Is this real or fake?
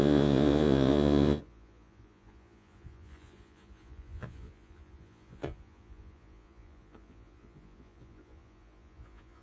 fake